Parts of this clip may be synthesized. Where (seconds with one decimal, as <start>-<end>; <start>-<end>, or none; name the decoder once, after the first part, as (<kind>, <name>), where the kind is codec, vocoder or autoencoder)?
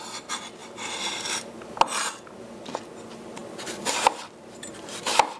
0.6-1.3 (vocoder, BigVGAN v2); 3.4-5.4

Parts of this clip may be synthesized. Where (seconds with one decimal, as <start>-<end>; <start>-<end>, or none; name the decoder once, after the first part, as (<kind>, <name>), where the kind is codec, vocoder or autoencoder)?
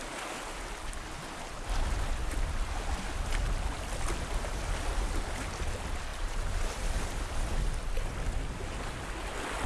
6.1-7.1 (vocoder, BigVGAN v2)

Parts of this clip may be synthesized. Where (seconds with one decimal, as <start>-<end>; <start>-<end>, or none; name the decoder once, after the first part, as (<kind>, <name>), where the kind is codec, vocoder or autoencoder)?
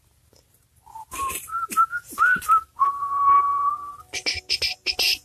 1.2-4.3 (vocoder, BigVGAN v2)